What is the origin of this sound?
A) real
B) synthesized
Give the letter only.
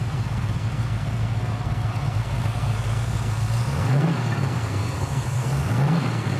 B